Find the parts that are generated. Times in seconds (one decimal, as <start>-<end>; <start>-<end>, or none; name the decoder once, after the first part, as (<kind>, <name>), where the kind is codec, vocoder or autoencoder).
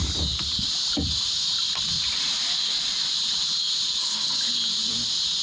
4.0-4.5 (codec, HILCodec)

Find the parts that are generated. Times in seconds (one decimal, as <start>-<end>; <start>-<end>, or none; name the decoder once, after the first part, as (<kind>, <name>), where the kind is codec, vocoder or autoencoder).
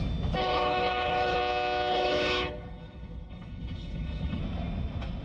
0.4-1.4 (codec, HILCodec); 1.9-4.4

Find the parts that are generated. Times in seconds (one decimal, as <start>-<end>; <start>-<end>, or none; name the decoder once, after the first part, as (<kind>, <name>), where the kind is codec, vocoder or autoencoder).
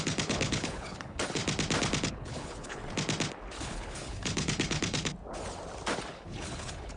0.0-1.4 (codec, HILCodec); 2.0-2.8; 3.6-5.1; 6.1-7.0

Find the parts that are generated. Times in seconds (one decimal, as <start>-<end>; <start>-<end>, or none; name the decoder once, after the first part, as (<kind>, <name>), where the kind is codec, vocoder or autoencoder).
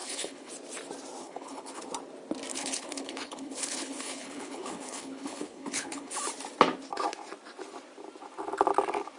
0.0-0.5 (codec, HILCodec); 1.2-1.8; 2.5-6.2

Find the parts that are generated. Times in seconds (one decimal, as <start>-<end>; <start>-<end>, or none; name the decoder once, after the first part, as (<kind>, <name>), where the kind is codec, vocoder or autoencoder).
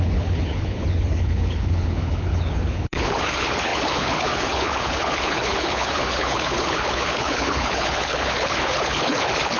0.0-9.6 (codec, HILCodec)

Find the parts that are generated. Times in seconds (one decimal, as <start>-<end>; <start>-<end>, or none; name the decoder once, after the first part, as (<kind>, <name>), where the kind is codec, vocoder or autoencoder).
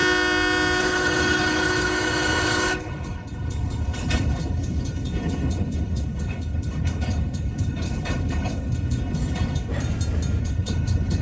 0.8-9.7 (codec, HILCodec); 10.4-11.2